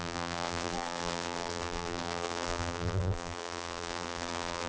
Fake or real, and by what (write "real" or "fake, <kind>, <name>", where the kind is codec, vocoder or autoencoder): fake, vocoder, BigVGAN v2